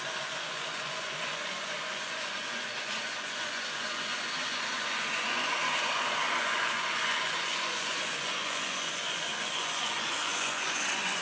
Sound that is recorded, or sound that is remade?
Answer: remade